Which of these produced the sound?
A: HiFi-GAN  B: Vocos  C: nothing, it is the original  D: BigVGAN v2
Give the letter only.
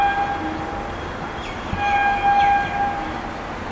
C